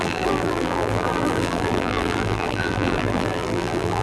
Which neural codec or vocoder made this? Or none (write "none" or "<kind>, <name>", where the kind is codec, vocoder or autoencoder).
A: vocoder, BigVGAN v2